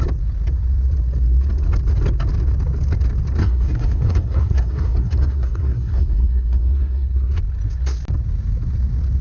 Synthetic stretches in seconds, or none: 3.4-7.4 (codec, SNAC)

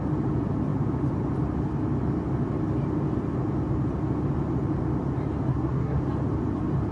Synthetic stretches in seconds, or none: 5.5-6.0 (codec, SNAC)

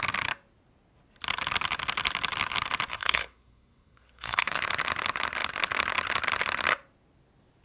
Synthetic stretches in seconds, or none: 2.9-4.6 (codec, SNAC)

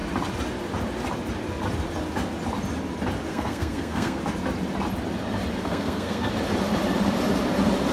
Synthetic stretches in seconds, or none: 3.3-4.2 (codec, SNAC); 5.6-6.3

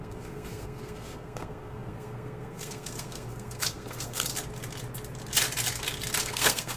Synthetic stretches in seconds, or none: 0.0-4.3 (codec, SNAC); 6.2-6.8

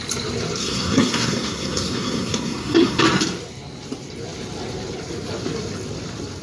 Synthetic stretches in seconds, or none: 0.6-3.0 (codec, SNAC)

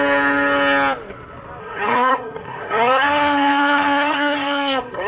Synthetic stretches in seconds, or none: 1.6-5.1 (codec, SNAC)

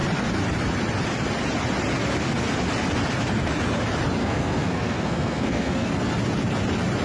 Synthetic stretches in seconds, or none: 4.2-5.9 (codec, SNAC)